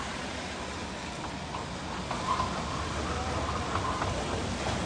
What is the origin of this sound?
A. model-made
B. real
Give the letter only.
B